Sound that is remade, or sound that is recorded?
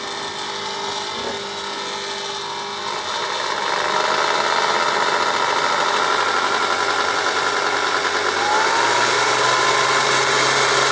recorded